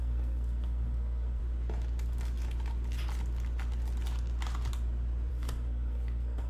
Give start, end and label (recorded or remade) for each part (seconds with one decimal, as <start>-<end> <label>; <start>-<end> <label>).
0.0-1.4 remade; 1.4-5.3 recorded; 5.3-6.5 remade